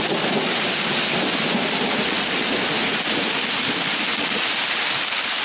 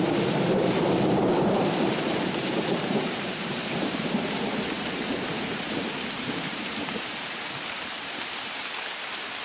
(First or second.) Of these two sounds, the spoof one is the second